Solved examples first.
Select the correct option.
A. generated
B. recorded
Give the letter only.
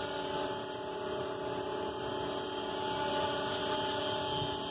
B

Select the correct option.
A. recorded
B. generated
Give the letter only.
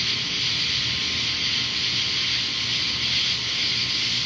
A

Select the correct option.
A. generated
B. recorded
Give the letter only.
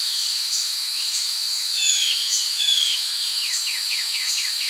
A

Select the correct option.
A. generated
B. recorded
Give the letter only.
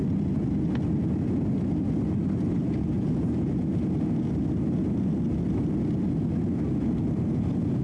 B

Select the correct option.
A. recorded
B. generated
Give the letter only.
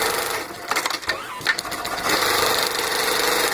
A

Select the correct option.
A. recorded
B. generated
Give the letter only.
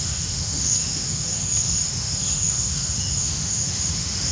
B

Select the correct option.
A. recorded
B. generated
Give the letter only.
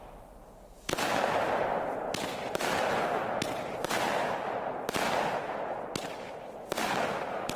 A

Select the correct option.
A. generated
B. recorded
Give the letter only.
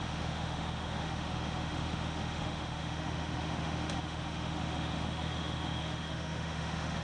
A